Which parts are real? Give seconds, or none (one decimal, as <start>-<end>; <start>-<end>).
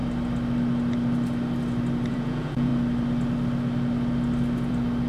0.0-2.1; 2.7-5.1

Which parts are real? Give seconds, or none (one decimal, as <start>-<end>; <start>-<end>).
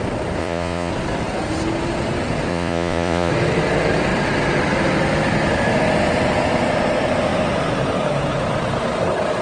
0.0-0.4; 0.9-2.5; 3.3-9.4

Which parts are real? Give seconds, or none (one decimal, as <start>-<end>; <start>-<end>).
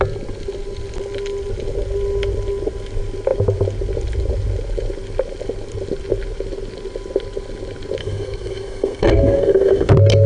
0.0-8.0; 9.9-10.3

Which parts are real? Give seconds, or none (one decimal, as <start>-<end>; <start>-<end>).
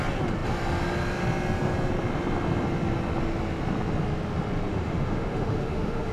0.0-4.7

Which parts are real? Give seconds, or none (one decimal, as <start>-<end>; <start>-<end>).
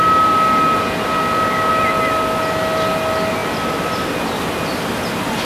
0.0-5.4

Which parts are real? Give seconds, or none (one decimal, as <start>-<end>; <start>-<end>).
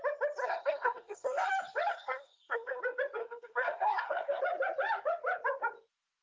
0.0-0.4; 1.5-1.9; 2.8-3.2; 4.4-6.2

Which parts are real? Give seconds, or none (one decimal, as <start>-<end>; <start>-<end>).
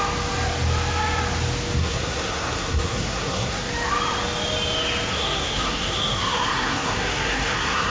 0.0-1.8; 3.7-5.1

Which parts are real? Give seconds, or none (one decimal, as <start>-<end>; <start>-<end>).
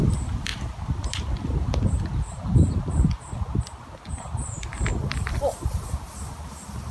0.5-4.2